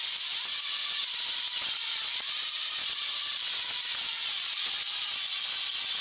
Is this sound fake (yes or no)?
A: no